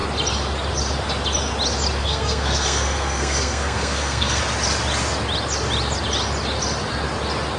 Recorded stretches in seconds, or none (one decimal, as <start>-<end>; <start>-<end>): 0.0-2.0; 4.4-7.6